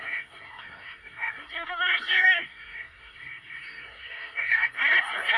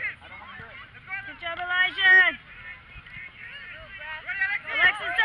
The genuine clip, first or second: second